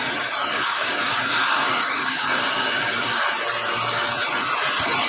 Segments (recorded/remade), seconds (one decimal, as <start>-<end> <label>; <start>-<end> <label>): 0.0-0.5 recorded; 0.5-3.2 remade; 3.2-5.1 recorded

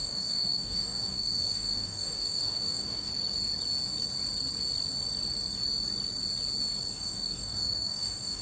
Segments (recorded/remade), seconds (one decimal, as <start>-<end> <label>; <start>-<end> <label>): 0.0-3.1 remade; 3.1-6.9 recorded; 6.9-8.4 remade

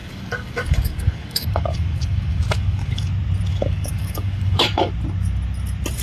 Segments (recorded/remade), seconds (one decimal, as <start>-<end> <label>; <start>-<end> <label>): 0.0-3.1 remade; 3.1-3.5 recorded; 3.5-4.9 remade; 4.9-6.0 recorded